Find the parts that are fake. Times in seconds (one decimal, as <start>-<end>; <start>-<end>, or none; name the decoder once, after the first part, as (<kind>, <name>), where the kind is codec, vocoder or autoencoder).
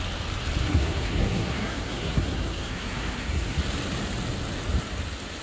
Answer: 0.6-3.6 (codec, SNAC)